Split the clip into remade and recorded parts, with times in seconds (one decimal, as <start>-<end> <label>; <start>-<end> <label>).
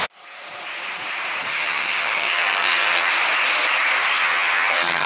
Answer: 0.0-1.5 recorded; 1.5-3.1 remade; 3.1-4.2 recorded; 4.2-5.1 remade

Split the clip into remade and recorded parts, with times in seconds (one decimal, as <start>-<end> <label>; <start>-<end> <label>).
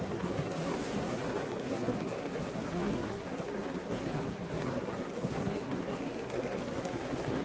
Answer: 0.0-7.4 remade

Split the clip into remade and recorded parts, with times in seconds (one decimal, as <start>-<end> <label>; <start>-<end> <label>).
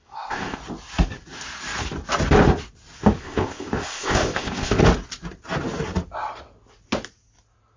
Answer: 0.0-0.6 remade; 0.6-3.2 recorded; 3.2-4.8 remade; 4.8-7.8 recorded